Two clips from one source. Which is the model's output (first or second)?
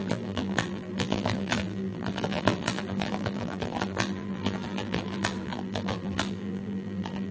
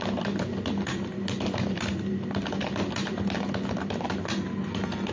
first